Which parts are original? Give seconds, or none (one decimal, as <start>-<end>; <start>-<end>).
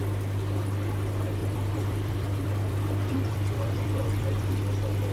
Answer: 0.0-1.4; 4.5-5.1